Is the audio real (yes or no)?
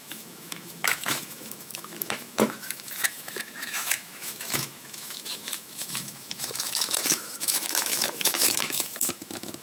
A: no